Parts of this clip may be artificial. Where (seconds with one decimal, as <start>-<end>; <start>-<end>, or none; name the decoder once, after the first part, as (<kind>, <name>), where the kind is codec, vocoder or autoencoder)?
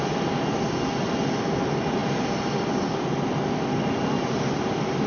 none